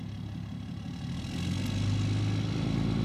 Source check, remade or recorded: recorded